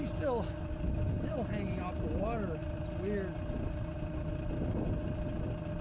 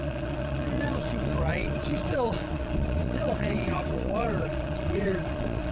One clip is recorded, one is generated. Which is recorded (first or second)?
first